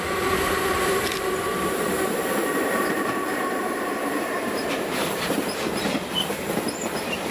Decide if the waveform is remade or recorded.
remade